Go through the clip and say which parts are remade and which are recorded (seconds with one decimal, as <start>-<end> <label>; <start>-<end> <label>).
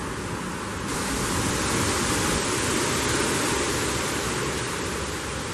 0.0-5.5 recorded